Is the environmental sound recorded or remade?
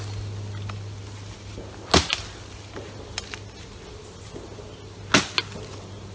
recorded